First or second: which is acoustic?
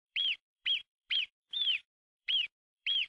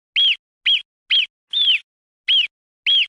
second